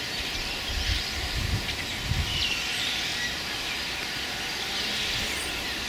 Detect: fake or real real